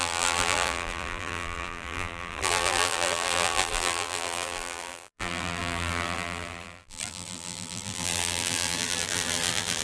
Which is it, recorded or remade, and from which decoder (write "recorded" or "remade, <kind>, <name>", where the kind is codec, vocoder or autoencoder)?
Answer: remade, vocoder, BigVGAN v2